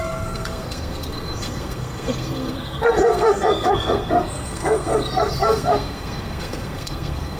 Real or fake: fake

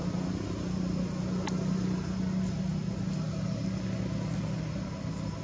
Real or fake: real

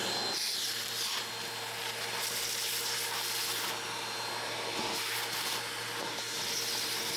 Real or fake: real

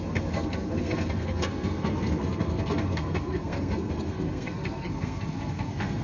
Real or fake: fake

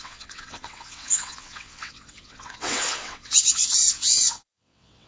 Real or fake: fake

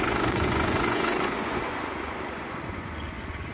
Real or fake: fake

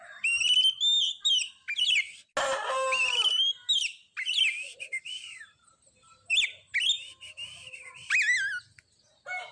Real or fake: real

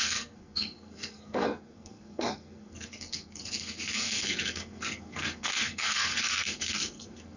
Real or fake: fake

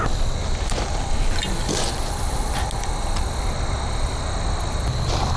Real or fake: real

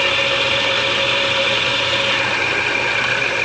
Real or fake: real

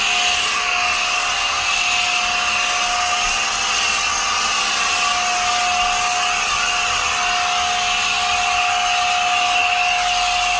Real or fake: real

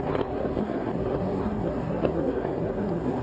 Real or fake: fake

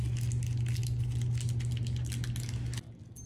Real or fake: real